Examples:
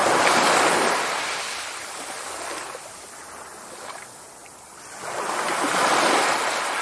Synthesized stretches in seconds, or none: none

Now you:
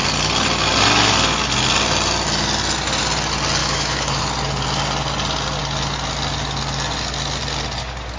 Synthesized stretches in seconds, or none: 3.6-4.2

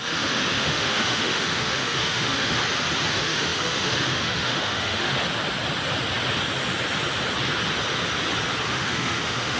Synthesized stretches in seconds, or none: 0.0-2.6; 3.1-5.1; 8.7-9.6

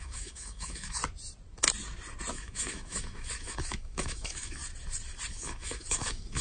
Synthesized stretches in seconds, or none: 0.0-1.0; 2.3-4.6; 5.3-6.4

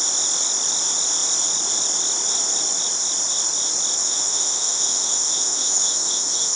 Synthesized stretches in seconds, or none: 4.0-6.6

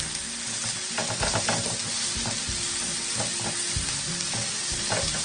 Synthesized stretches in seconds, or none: none

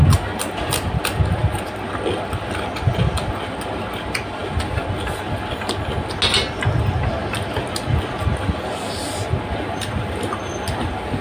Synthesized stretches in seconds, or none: none